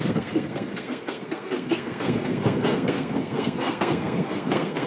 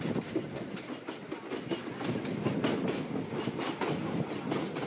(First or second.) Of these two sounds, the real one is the second